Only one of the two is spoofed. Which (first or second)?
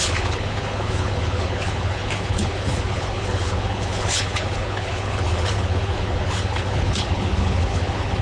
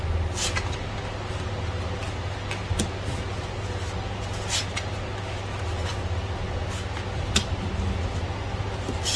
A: first